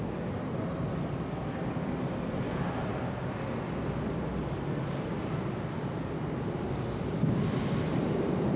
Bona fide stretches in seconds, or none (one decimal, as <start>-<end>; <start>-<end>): 0.0-8.6